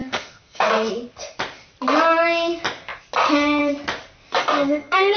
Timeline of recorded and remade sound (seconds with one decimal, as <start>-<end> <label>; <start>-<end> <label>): 0.0-0.9 remade; 0.9-4.4 recorded; 4.4-5.2 remade